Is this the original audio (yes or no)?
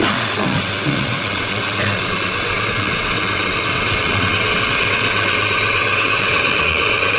no